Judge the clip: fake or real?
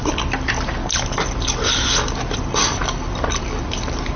fake